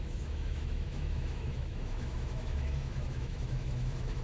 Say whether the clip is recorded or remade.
remade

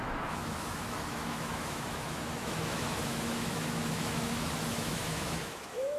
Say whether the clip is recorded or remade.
remade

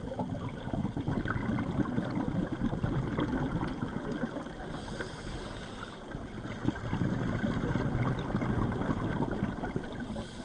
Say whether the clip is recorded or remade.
recorded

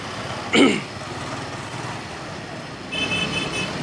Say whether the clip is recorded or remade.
recorded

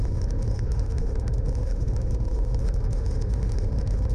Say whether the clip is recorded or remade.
remade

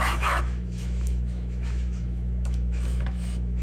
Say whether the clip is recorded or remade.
remade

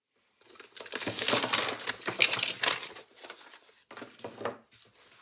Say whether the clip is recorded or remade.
recorded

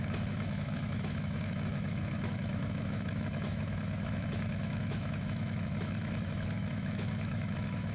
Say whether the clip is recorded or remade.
remade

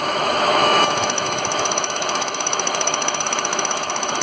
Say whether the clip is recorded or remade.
remade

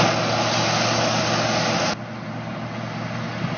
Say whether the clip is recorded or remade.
recorded